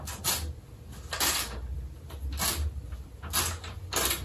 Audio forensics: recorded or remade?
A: recorded